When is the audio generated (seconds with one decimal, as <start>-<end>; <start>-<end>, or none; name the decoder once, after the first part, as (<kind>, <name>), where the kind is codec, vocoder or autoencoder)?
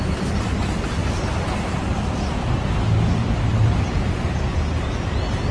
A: 1.0-2.2 (vocoder, BigVGAN v2); 3.5-4.3